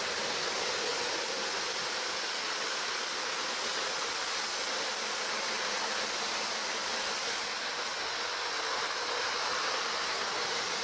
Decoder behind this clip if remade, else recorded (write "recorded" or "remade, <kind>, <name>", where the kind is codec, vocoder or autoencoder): recorded